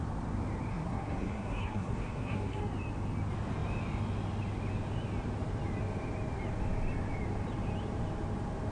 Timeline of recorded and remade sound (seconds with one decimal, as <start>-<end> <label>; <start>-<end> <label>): 0.0-0.7 recorded; 0.7-2.6 remade; 2.6-8.7 recorded